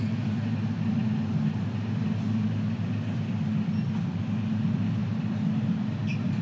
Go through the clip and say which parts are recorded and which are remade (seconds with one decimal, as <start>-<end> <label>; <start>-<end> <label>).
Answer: 0.0-6.4 recorded